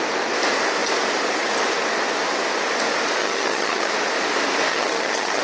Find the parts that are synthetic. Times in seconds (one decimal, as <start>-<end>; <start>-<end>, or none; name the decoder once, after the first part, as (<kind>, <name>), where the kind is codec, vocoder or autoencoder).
3.2-3.9 (vocoder, HiFi-GAN); 4.7-5.4